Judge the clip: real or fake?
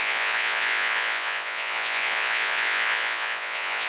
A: fake